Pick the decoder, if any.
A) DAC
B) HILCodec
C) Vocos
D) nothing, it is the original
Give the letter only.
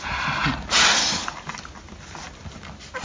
D